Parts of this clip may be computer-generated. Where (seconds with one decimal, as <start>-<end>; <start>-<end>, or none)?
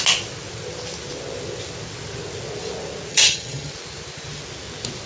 3.1-3.7